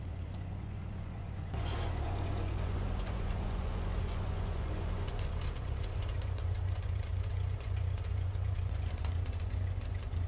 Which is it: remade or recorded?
remade